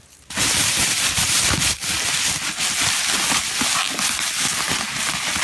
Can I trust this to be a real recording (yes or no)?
yes